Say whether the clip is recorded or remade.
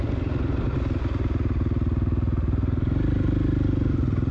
recorded